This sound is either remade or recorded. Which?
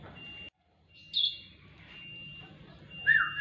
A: recorded